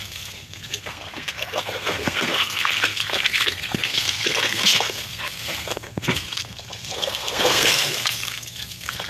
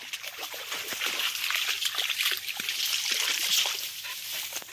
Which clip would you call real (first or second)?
second